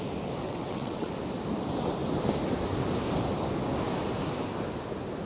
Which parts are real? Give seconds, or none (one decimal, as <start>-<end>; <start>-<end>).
0.0-0.4; 1.1-5.3